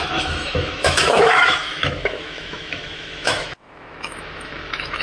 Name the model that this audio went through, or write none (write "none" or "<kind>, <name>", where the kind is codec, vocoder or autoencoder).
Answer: autoencoder, DAC-VAE